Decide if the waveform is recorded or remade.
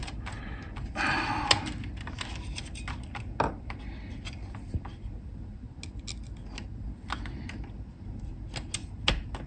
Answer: recorded